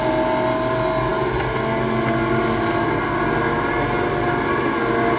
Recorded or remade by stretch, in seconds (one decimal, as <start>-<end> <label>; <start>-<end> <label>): 0.0-5.2 recorded